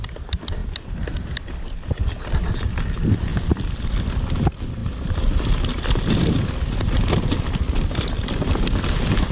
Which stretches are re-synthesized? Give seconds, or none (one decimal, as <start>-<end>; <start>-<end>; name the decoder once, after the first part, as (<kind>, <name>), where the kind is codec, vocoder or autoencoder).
0.0-3.3 (vocoder, BigVGAN v2); 3.8-9.3